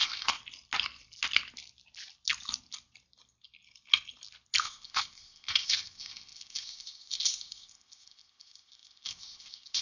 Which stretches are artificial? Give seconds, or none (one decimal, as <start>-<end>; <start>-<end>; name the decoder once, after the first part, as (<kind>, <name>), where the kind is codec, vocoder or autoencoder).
0.0-0.4 (codec, ZipCodec); 4.6-9.8